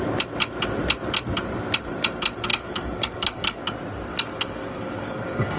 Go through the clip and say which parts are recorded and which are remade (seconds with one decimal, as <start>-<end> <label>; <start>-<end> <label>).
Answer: 0.0-2.5 recorded; 2.5-3.6 remade; 3.6-4.1 recorded; 4.1-5.6 remade